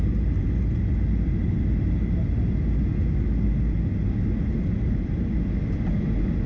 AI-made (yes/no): no